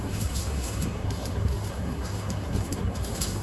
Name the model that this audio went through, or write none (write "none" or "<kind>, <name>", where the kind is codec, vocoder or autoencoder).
codec, SNAC